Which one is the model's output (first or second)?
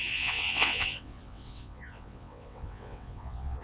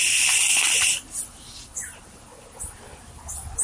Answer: first